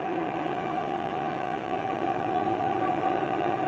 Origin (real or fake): fake